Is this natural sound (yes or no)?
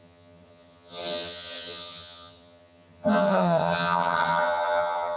no